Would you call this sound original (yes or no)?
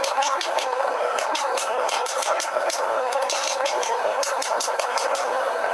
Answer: no